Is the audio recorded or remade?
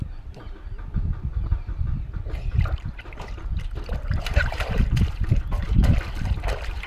remade